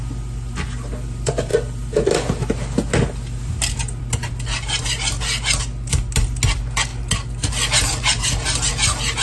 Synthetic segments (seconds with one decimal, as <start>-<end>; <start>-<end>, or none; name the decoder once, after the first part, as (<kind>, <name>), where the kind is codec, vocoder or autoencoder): none